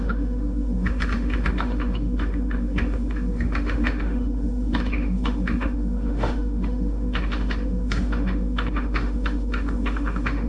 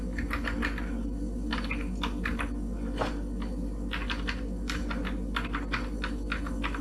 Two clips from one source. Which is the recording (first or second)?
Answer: second